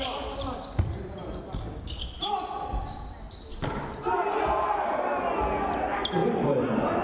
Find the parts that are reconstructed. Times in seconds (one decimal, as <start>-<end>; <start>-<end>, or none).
3.5-4.9